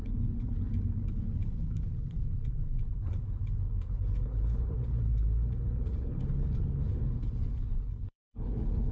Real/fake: fake